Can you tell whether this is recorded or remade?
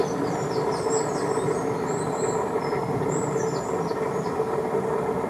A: recorded